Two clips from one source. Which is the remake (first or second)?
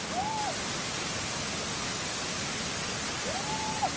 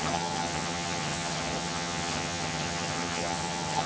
second